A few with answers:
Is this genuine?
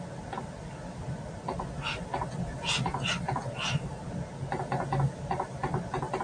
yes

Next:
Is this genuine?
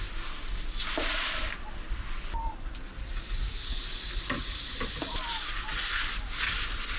yes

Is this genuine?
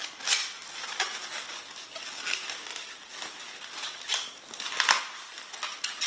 yes